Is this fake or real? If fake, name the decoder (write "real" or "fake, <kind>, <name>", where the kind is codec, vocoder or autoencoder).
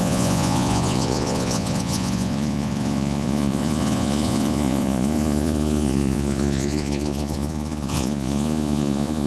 fake, vocoder, Vocos